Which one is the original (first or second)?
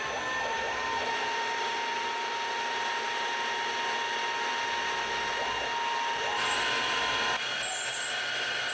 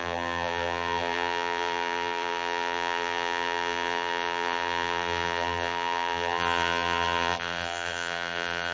first